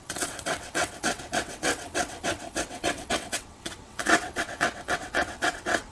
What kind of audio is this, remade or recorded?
remade